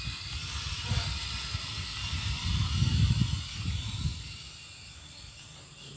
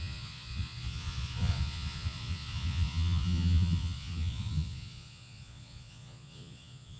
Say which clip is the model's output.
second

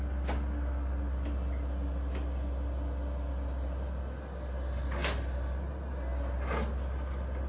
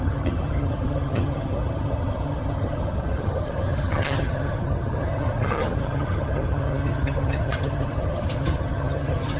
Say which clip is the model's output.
second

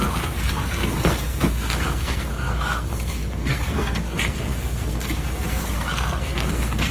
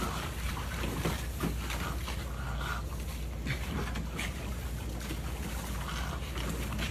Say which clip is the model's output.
first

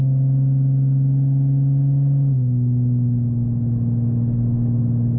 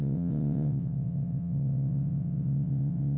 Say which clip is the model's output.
second